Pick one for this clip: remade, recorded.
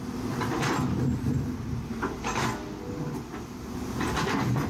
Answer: recorded